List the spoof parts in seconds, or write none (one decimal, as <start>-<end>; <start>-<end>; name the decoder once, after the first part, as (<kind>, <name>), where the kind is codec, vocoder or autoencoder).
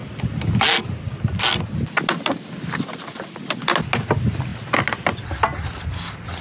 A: none